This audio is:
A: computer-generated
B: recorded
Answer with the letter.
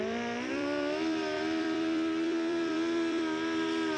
A